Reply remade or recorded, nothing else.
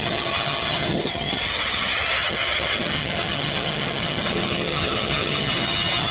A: remade